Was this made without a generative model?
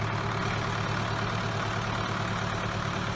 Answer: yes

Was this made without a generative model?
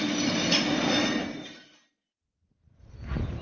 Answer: yes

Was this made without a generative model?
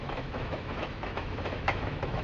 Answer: no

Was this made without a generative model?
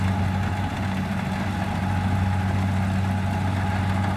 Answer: yes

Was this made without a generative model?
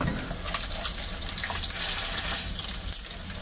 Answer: yes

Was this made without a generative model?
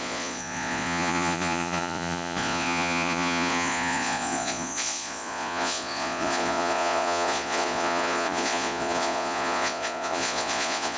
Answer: no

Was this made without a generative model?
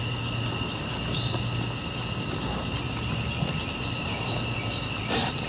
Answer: no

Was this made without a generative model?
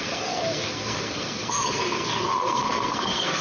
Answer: no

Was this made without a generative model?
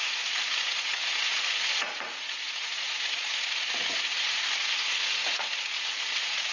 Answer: no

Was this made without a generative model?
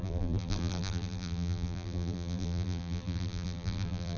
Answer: no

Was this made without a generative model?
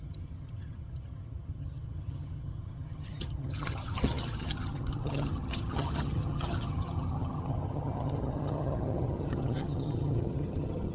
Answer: no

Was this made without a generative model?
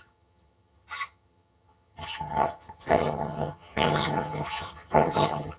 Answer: no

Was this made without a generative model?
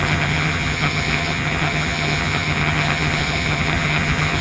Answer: no